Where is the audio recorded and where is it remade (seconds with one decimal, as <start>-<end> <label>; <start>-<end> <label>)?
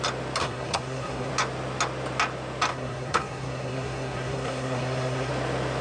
0.0-0.4 recorded; 0.4-1.3 remade; 1.3-2.7 recorded; 2.7-5.3 remade; 5.3-5.8 recorded